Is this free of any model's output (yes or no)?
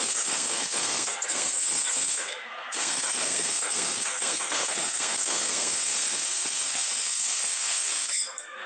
no